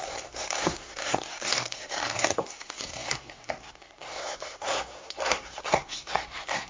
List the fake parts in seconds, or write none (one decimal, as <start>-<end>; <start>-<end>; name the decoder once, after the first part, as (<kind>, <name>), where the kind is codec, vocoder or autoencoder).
0.0-6.7 (codec, SNAC)

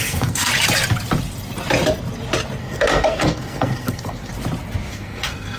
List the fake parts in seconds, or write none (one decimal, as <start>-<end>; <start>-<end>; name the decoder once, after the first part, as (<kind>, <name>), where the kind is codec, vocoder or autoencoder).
0.0-0.5 (codec, SNAC); 2.6-4.3; 4.9-5.6

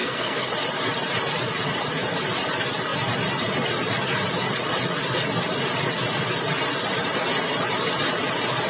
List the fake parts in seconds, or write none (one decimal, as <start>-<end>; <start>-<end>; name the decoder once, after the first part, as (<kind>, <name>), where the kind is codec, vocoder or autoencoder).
0.0-0.5 (codec, SNAC)

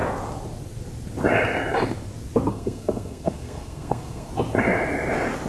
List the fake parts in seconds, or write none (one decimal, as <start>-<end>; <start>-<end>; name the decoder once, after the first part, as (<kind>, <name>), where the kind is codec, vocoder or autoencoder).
2.5-4.3 (codec, SNAC)

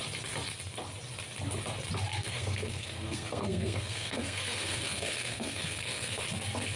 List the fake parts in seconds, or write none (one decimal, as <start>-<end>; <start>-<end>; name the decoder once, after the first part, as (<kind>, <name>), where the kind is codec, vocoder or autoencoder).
2.1-6.2 (codec, SNAC)